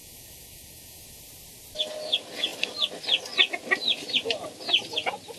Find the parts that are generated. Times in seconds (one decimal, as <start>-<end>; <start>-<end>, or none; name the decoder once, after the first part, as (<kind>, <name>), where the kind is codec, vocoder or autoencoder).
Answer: 0.0-1.2 (autoencoder, DAC-VAE)

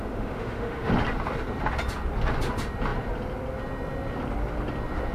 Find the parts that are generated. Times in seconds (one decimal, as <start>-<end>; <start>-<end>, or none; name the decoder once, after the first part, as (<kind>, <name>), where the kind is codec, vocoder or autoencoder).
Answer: 0.0-0.9 (autoencoder, DAC-VAE)

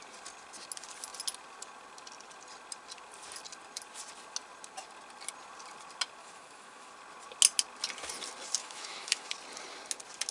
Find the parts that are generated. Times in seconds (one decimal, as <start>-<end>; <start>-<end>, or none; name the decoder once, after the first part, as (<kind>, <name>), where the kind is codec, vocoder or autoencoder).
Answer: 6.2-6.9 (autoencoder, DAC-VAE); 8.6-9.3

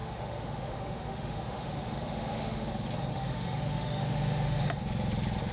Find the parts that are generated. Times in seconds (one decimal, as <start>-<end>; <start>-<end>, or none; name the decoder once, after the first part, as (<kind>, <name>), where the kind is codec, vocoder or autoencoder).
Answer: 0.0-2.7 (autoencoder, DAC-VAE); 3.1-4.6